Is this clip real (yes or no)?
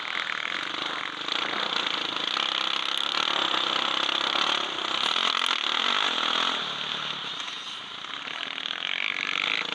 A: yes